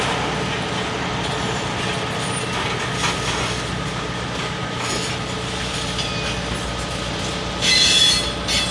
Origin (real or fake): real